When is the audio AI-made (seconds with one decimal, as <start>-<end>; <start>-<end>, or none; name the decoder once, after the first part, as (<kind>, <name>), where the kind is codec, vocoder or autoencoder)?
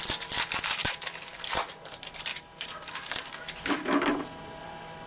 0.8-1.7 (vocoder, BigVGAN v2); 2.3-3.3